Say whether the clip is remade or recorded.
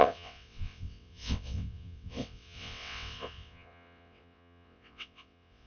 remade